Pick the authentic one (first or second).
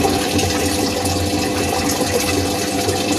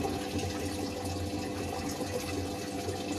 second